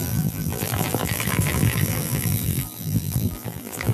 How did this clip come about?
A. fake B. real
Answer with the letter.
A